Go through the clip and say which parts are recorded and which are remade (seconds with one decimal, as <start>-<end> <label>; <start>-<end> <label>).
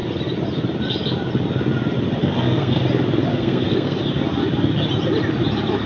0.0-2.2 recorded; 2.2-2.8 remade; 2.8-3.3 recorded; 3.3-4.0 remade; 4.0-5.9 recorded